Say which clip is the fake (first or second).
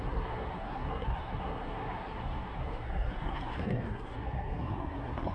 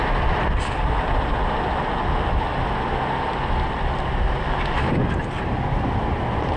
first